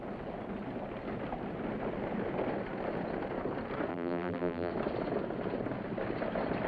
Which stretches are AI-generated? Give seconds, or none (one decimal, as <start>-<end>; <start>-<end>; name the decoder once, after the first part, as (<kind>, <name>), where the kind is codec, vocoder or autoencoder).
3.9-4.7 (vocoder, BigVGAN v2)